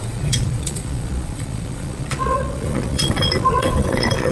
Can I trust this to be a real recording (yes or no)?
no